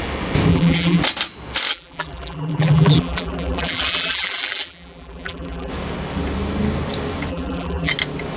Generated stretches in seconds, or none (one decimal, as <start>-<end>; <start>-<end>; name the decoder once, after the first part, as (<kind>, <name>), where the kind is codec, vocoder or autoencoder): 0.5-1.0 (vocoder, BigVGAN v2); 1.7-5.7; 7.3-7.9

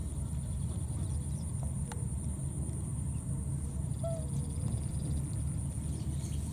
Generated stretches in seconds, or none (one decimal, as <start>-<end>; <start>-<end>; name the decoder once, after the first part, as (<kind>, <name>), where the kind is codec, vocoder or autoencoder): 0.0-3.9 (vocoder, BigVGAN v2)

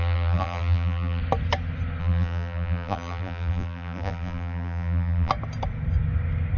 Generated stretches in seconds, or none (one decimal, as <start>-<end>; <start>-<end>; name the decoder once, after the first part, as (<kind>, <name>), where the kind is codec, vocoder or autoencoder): 0.0-1.2 (vocoder, BigVGAN v2); 2.0-5.3

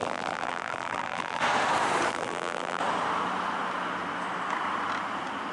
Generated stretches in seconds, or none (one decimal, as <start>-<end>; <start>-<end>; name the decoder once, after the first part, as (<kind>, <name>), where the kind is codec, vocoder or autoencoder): 0.0-1.4 (vocoder, BigVGAN v2); 2.1-2.8